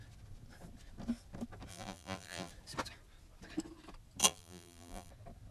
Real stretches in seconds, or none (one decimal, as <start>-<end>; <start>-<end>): 0.0-1.7; 2.5-4.2; 5.1-5.5